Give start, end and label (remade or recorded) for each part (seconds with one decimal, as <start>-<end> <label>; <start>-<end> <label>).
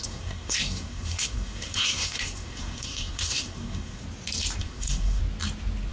0.0-4.0 remade; 4.0-4.6 recorded; 4.6-5.2 remade; 5.2-5.9 recorded